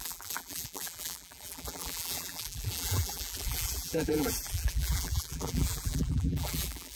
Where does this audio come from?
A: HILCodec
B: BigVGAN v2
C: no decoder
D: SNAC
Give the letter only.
B